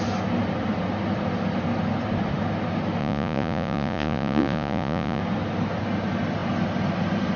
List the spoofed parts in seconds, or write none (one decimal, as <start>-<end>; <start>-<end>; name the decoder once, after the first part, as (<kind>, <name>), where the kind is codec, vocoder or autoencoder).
3.0-5.2 (vocoder, Vocos)